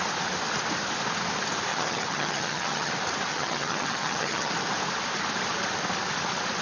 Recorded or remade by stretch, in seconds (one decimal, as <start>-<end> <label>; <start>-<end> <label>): 0.0-1.7 recorded; 1.7-2.9 remade; 2.9-3.3 recorded; 3.3-4.5 remade; 4.5-6.6 recorded